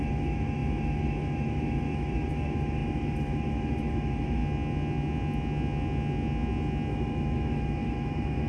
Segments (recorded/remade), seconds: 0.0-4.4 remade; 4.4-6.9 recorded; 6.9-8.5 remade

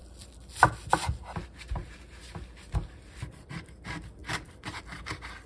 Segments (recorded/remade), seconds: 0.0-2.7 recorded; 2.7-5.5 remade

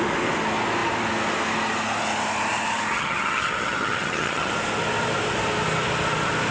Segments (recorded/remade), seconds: 0.0-2.9 recorded; 2.9-4.5 remade; 4.5-6.5 recorded

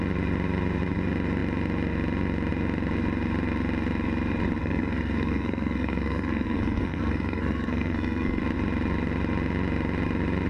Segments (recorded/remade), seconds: 0.0-4.6 recorded; 4.6-8.4 remade; 8.4-10.5 recorded

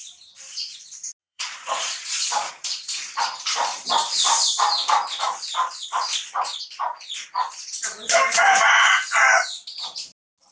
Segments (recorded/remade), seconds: 0.0-1.2 recorded; 1.2-2.5 remade; 2.5-10.5 recorded

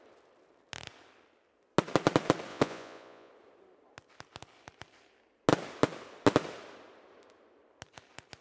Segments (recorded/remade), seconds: 0.0-2.5 recorded; 2.5-3.3 remade; 3.3-8.4 recorded

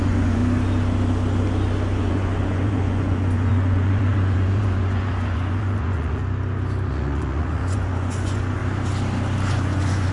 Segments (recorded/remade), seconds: 0.0-0.4 remade; 0.4-2.0 recorded; 2.0-6.2 remade; 6.2-6.9 recorded; 6.9-8.6 remade; 8.6-9.5 recorded; 9.5-10.1 remade